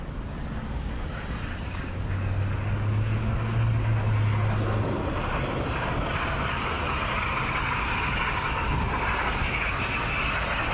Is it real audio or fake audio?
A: real